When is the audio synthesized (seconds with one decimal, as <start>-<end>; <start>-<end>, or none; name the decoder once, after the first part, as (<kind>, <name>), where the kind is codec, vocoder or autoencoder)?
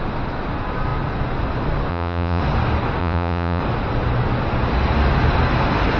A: 1.9-2.4 (vocoder, Vocos); 3.0-3.6